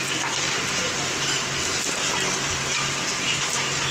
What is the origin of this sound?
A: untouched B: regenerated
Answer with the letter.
A